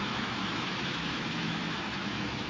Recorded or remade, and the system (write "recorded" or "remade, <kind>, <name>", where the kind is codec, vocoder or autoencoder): remade, autoencoder, DAC-VAE